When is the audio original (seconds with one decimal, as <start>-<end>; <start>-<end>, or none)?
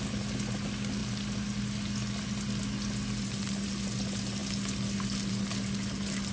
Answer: 0.0-6.3